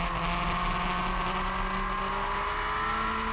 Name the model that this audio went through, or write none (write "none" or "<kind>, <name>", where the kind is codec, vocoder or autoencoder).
none